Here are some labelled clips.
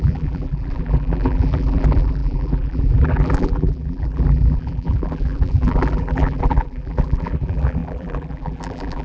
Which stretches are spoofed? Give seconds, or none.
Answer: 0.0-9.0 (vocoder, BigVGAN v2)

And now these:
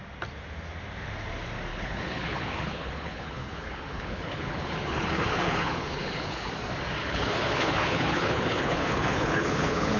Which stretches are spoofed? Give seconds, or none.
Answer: 1.7-6.5 (codec, HILCodec); 7.0-10.0